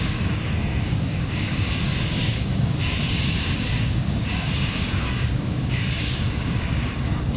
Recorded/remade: remade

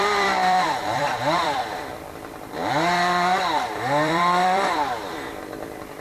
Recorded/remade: remade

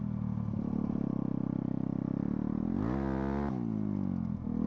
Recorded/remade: recorded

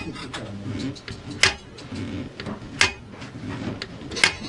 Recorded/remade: recorded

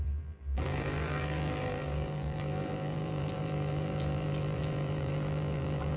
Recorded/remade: remade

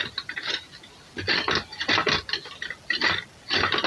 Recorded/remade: recorded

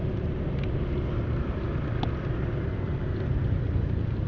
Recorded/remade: recorded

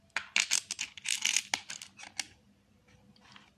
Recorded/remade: recorded